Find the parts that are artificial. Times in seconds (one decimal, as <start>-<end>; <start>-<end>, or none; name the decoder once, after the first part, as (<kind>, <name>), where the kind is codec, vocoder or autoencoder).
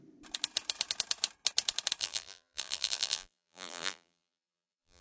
2.0-5.0 (vocoder, BigVGAN v2)